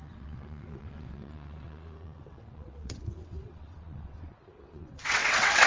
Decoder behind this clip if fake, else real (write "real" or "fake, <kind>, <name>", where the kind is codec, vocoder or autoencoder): fake, vocoder, WaveNeXt